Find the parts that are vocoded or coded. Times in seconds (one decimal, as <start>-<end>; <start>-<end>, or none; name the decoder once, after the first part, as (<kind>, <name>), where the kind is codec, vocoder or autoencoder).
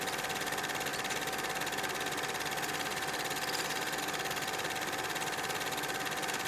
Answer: none